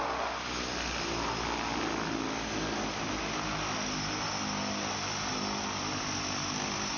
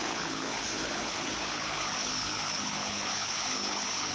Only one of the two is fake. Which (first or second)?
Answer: second